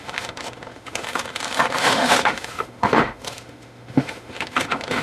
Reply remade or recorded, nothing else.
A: remade